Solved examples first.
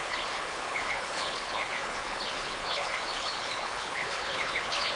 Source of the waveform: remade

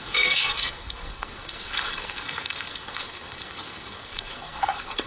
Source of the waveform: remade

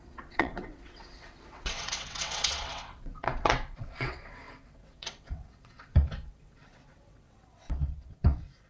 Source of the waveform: remade